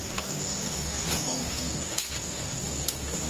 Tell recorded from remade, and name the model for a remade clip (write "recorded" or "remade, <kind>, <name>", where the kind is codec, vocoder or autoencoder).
remade, codec, DAC